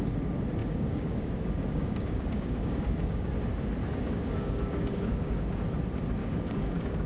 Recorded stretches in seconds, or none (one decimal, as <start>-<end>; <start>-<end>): 0.0-0.6; 3.3-3.8; 5.6-6.2

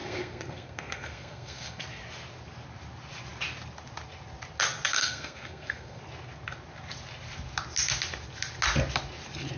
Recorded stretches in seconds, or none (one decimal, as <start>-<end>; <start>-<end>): 1.8-4.9; 6.0-9.6

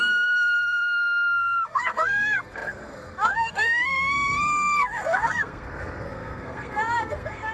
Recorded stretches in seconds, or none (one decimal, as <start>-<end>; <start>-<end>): none

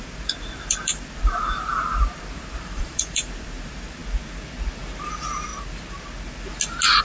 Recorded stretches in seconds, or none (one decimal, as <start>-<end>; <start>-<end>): 4.0-5.1; 5.5-7.0

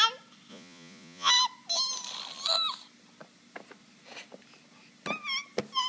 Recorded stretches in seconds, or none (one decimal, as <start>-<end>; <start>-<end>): 0.0-0.5; 1.3-5.9

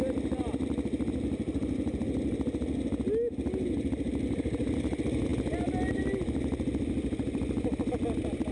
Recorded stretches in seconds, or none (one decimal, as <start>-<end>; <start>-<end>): 0.0-8.5

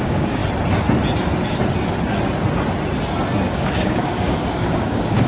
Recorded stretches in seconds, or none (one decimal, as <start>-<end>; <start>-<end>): 0.4-3.5

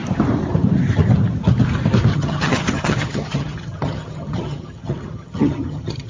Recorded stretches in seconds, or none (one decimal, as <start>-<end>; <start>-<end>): 0.0-2.1